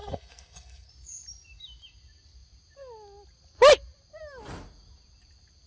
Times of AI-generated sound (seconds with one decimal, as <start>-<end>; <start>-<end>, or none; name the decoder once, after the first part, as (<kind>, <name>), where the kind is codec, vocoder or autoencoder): 0.0-0.9 (codec, SNAC)